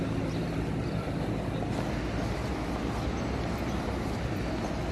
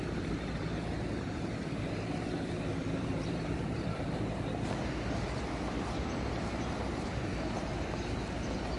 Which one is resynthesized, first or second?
second